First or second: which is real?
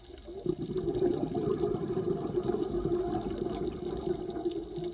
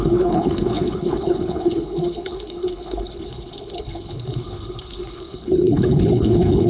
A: first